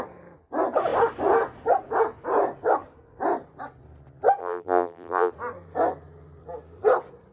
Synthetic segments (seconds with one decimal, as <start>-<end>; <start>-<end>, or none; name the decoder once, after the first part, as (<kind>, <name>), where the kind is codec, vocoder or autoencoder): 4.4-5.3 (vocoder, BigVGAN v2)